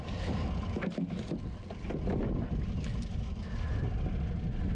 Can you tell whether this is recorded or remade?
recorded